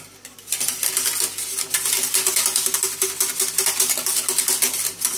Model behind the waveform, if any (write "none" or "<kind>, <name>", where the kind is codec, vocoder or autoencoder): none